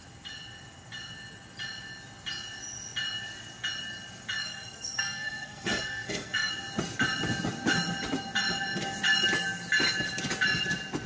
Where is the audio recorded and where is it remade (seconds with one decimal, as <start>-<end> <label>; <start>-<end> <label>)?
0.0-4.4 recorded; 4.4-6.5 remade; 6.5-11.1 recorded